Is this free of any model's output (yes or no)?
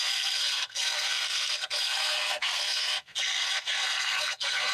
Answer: no